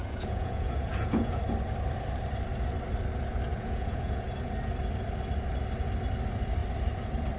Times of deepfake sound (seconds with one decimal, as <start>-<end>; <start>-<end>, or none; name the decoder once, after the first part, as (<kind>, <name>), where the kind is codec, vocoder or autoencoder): 0.0-1.4 (vocoder, Vocos); 3.5-4.2